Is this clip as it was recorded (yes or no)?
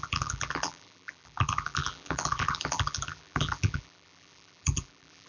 no